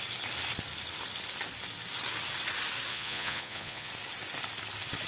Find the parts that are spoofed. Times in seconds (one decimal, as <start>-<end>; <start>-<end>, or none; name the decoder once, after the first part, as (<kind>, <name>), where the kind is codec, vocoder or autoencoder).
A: 2.9-3.9 (vocoder, Vocos)